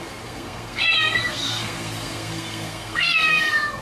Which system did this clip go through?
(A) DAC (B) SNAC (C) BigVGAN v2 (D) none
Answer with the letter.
B